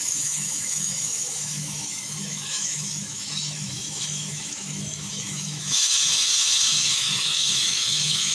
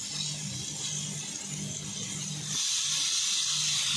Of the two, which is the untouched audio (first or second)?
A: second